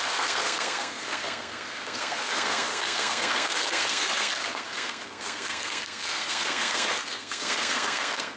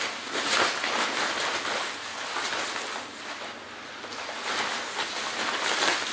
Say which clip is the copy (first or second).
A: first